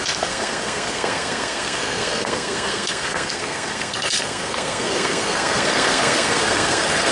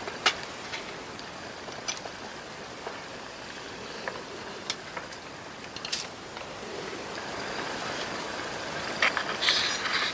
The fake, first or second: first